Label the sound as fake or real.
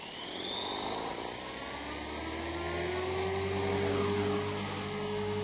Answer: real